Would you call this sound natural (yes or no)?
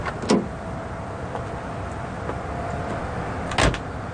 yes